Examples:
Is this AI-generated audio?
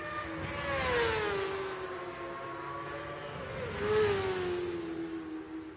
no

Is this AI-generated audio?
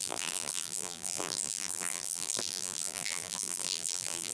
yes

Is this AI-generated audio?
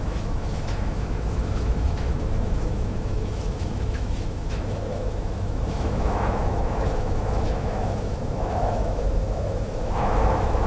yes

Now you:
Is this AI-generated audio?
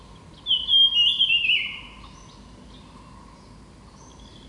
no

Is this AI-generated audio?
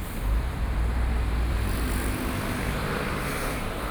yes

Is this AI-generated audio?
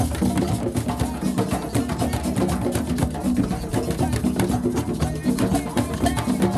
no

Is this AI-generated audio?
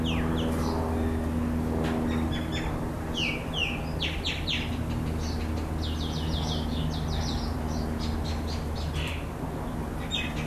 no